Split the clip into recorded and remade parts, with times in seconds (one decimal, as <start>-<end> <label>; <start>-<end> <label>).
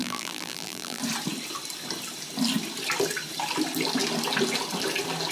0.0-1.0 remade; 1.0-5.3 recorded